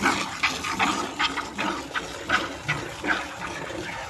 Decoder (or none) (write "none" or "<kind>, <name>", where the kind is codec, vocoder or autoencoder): none